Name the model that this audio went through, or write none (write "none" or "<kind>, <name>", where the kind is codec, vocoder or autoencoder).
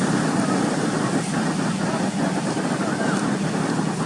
none